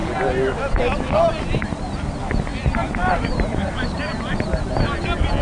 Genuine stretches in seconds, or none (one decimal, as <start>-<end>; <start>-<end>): 0.0-2.5; 4.8-5.4